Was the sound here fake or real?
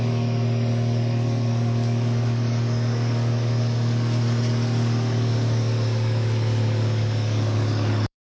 fake